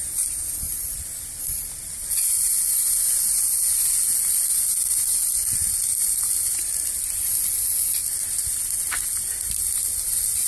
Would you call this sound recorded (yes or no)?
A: yes